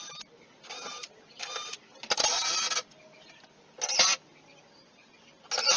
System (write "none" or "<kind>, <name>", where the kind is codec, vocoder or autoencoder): none